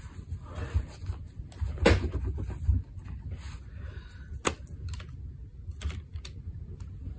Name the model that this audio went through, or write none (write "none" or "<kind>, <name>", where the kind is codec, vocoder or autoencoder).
none